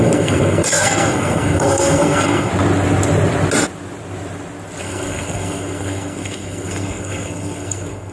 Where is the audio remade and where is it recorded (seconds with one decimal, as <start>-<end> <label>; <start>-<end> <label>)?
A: 0.0-2.5 remade; 2.5-4.8 recorded; 4.8-8.1 remade